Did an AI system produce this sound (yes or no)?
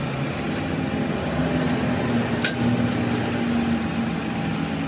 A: no